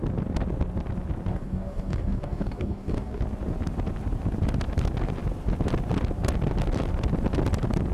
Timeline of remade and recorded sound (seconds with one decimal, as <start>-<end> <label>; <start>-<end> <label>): 0.0-1.3 recorded; 1.3-3.2 remade; 3.2-7.9 recorded